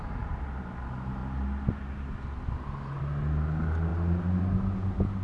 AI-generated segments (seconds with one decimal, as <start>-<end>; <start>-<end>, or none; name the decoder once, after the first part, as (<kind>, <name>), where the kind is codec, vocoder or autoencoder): none